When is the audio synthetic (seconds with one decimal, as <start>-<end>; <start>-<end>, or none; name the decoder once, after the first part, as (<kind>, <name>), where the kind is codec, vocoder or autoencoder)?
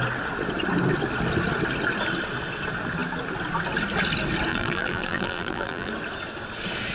4.5-5.9 (vocoder, BigVGAN v2)